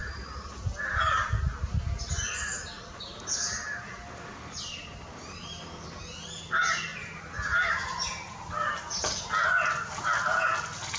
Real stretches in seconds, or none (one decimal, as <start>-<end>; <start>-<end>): 0.0-11.0